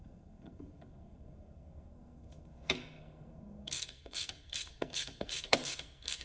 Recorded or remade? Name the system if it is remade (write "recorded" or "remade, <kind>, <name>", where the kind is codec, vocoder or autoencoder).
remade, codec, SNAC